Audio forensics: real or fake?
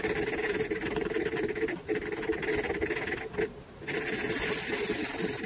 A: real